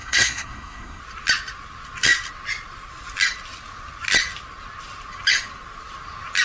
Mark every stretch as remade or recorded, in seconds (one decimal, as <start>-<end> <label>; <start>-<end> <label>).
0.0-1.0 remade; 1.0-6.4 recorded